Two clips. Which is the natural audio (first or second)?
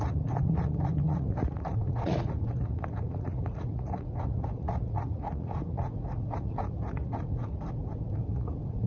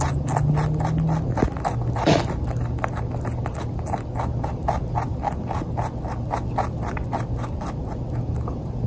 second